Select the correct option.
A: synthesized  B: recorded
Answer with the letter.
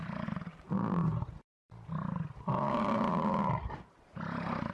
A